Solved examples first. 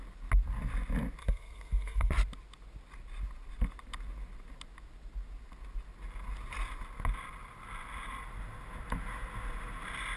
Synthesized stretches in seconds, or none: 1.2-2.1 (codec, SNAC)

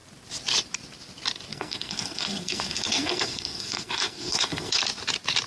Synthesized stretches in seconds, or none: 1.5-4.8 (codec, SNAC)